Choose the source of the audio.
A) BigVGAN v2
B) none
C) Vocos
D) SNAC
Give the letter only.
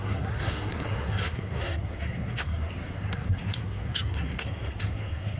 D